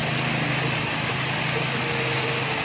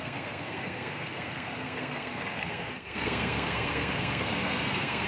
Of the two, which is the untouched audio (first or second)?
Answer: first